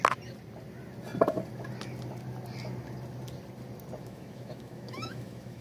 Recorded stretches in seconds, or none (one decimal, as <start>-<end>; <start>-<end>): 0.0-4.0